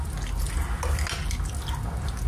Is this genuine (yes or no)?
yes